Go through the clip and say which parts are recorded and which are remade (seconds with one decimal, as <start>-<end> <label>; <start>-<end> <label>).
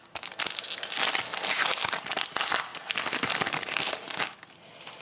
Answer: 0.0-5.0 recorded